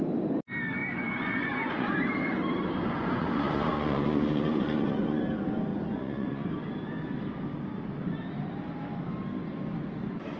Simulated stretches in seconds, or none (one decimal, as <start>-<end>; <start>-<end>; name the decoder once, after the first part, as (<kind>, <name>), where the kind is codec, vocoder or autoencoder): 0.8-1.9 (vocoder, Vocos); 2.8-5.2; 5.7-6.5